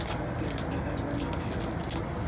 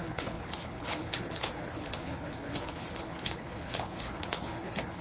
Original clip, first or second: first